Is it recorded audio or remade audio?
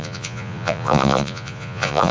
remade